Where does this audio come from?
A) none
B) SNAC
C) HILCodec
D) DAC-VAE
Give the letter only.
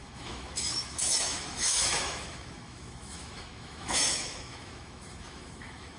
D